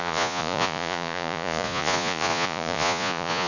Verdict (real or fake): fake